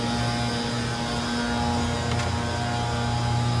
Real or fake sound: real